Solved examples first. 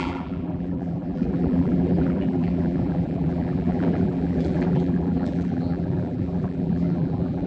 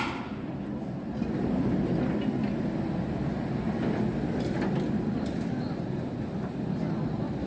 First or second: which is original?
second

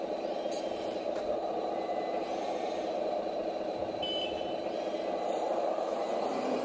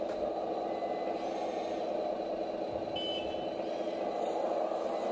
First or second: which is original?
second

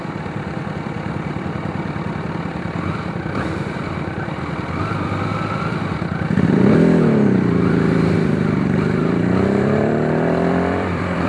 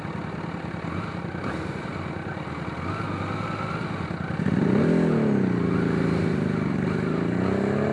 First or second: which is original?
second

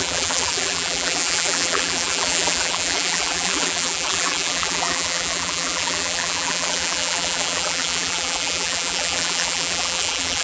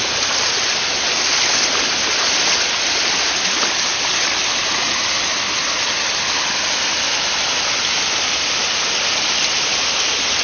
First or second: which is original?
second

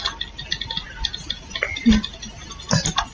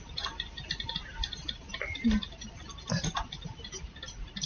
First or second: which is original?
first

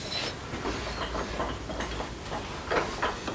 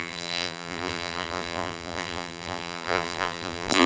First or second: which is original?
first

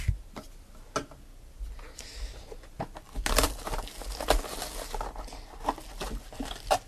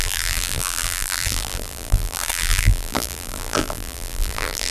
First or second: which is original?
first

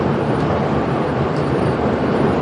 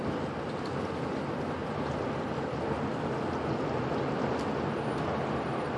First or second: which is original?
second